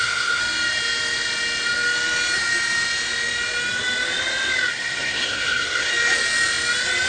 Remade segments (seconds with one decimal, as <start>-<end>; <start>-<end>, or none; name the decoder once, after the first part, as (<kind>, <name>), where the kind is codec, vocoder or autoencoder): 0.0-0.4 (codec, SNAC); 4.7-5.9